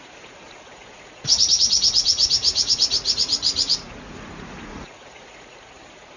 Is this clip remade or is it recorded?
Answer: remade